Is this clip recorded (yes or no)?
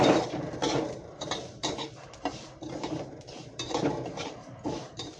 no